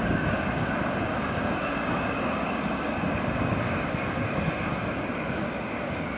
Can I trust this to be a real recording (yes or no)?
no